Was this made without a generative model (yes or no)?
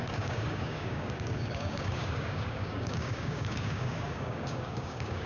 no